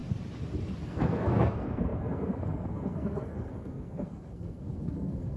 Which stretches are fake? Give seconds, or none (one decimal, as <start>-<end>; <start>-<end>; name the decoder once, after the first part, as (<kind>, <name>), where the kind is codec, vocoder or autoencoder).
0.8-5.4 (codec, SNAC)